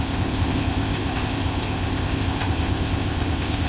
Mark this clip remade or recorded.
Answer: remade